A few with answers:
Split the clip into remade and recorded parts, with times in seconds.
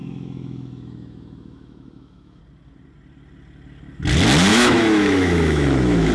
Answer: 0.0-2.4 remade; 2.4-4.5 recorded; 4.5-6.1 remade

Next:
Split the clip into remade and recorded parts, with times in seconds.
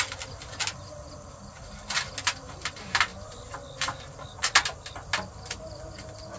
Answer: 0.0-6.4 recorded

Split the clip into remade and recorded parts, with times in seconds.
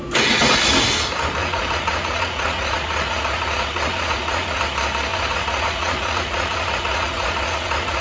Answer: 0.0-1.4 recorded; 1.4-4.6 remade; 4.6-5.1 recorded; 5.1-8.0 remade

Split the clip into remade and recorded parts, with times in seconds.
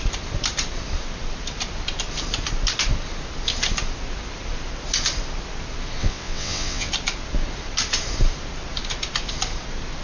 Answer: 0.0-6.0 recorded; 6.0-6.9 remade; 6.9-10.0 recorded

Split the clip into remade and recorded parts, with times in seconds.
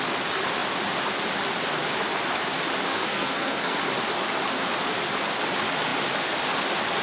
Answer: 0.0-2.9 recorded; 2.9-3.8 remade; 3.8-7.0 recorded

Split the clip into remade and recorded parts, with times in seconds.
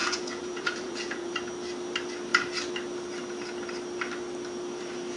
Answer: 0.0-1.3 remade; 1.3-5.2 recorded